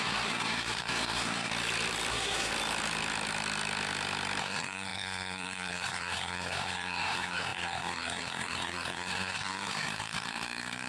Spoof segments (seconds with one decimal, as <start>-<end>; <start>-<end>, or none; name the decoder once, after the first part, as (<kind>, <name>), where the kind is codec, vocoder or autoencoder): 0.0-1.5 (codec, SNAC); 2.1-2.5; 4.4-10.9